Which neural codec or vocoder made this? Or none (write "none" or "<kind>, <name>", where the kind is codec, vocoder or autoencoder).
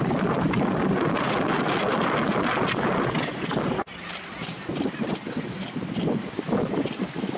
none